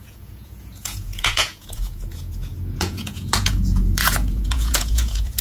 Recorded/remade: remade